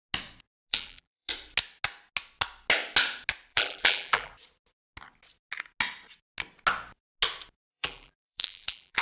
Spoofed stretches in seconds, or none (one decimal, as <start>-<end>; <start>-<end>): 0.7-1.3; 3.5-4.3; 7.7-9.0